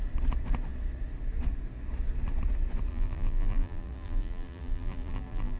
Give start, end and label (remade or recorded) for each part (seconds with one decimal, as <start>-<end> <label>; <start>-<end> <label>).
0.0-2.9 recorded; 2.9-5.6 remade